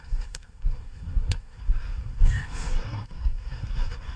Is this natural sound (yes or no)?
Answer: no